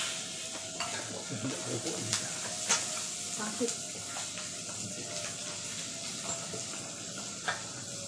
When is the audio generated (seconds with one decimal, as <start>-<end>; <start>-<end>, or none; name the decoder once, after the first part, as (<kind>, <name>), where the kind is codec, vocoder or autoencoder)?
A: none